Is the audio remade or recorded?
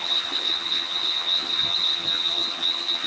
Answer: remade